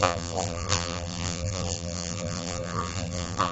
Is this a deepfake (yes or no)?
yes